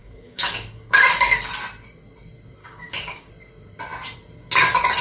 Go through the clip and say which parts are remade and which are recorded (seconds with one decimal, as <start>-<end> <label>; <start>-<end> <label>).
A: 0.0-1.5 remade; 1.5-2.6 recorded; 2.6-3.3 remade; 3.3-5.0 recorded